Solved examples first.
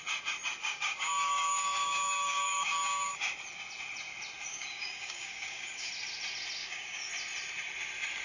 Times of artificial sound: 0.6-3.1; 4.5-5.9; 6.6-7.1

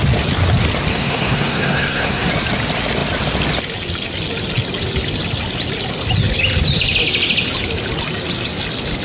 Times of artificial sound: 0.9-2.3